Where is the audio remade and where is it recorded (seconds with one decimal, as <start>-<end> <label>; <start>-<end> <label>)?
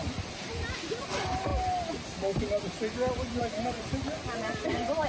0.0-5.1 recorded